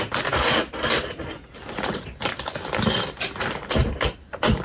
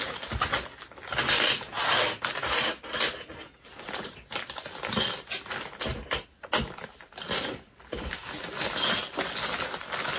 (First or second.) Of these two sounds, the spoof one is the first